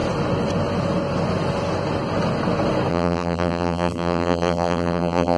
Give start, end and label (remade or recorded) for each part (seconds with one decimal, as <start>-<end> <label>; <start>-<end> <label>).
0.0-2.9 recorded; 2.9-5.4 remade